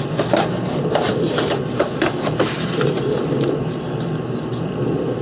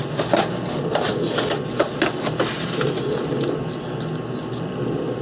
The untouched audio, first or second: second